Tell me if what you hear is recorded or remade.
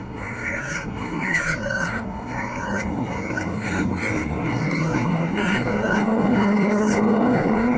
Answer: remade